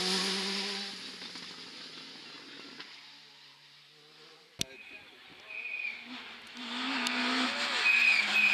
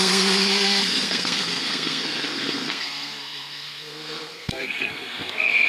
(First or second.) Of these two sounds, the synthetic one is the second